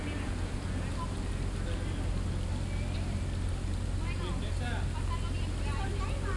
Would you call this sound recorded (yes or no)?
yes